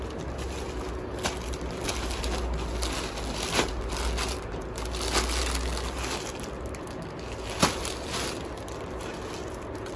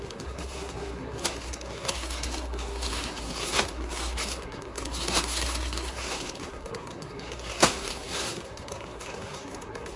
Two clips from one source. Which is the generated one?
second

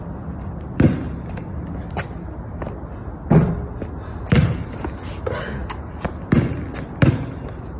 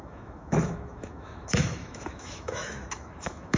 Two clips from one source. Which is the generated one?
second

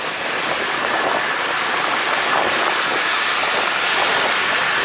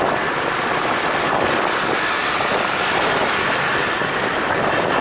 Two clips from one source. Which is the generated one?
first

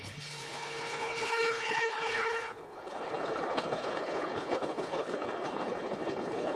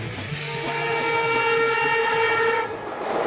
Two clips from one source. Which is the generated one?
first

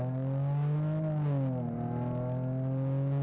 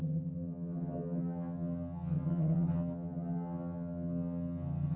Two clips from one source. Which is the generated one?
second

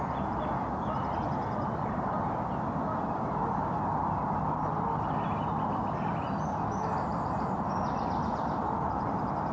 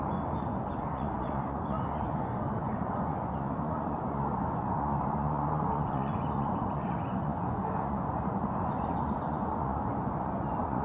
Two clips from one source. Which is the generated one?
second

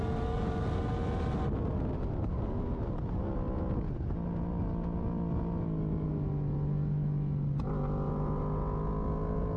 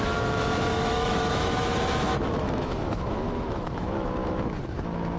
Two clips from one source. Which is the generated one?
second